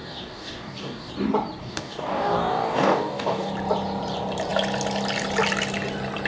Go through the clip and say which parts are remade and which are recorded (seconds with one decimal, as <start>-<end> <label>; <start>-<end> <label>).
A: 0.0-1.1 remade; 1.1-1.6 recorded; 1.6-3.5 remade; 3.5-6.3 recorded